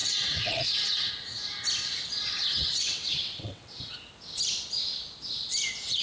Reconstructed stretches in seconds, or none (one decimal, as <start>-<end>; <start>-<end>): 0.0-1.1; 2.4-3.9